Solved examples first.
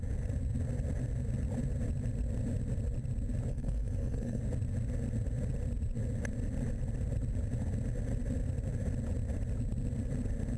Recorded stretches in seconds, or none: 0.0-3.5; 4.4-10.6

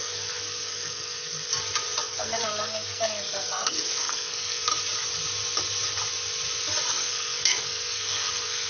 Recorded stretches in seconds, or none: 1.5-2.0; 4.7-6.9